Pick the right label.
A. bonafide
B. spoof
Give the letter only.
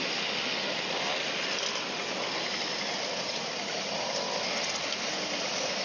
A